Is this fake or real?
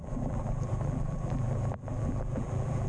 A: fake